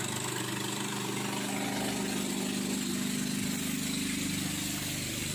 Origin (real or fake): real